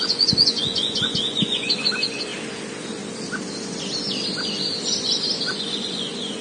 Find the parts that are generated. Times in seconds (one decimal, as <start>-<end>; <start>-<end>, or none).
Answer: 0.0-2.3; 5.4-6.4